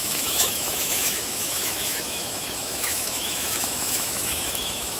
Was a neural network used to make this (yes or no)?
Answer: yes